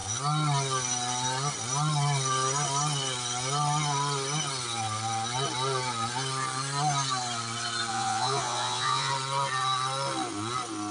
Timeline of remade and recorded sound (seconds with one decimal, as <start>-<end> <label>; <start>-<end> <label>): 0.0-7.9 recorded; 7.9-9.1 remade; 9.1-10.9 recorded